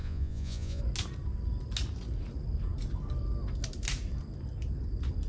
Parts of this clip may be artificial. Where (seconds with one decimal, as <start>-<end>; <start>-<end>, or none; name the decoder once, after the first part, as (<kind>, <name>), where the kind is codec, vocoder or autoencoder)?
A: 0.0-0.8 (vocoder, Vocos)